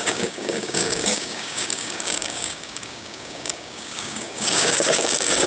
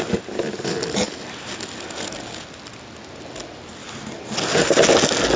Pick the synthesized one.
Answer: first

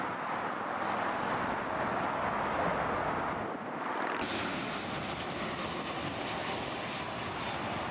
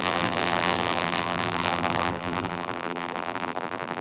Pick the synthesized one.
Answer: second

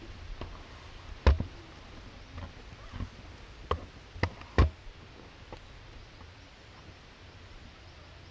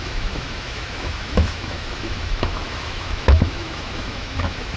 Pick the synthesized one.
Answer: second